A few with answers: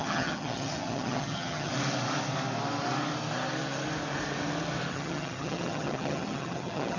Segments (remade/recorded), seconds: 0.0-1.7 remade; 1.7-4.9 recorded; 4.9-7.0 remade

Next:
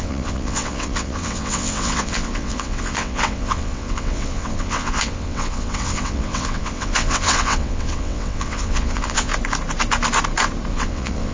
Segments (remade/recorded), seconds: 0.0-9.3 remade; 9.3-10.7 recorded; 10.7-11.3 remade

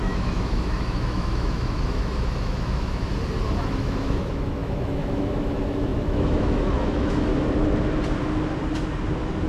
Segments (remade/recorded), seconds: 0.0-3.1 remade; 3.1-3.6 recorded; 3.6-7.3 remade; 7.3-9.5 recorded

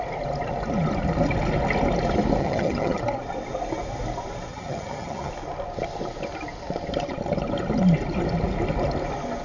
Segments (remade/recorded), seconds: 0.0-2.4 recorded; 2.4-3.0 remade; 3.0-4.5 recorded; 4.5-5.3 remade; 5.3-9.4 recorded

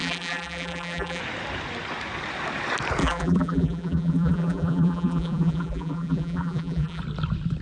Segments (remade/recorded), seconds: 0.0-1.2 remade; 1.2-3.0 recorded; 3.0-7.0 remade; 7.0-7.6 recorded

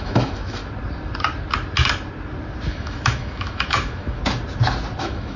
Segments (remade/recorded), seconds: 0.0-0.6 remade; 0.6-2.7 recorded; 2.7-4.2 remade; 4.2-5.0 recorded; 5.0-5.4 remade

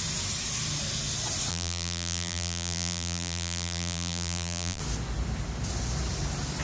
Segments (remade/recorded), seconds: 0.0-1.5 recorded; 1.5-4.8 remade; 4.8-6.6 recorded

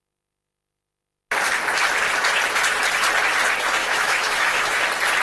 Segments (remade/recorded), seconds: 0.0-3.8 recorded; 3.8-4.8 remade; 4.8-5.2 recorded